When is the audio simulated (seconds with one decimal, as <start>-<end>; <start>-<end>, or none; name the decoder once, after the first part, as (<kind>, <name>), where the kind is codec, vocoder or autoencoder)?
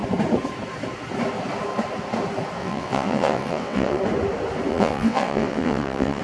2.6-4.0 (vocoder, WaveNeXt); 4.7-6.2